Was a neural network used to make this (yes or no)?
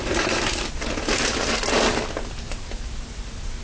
no